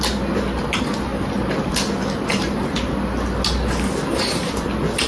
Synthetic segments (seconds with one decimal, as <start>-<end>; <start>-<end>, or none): none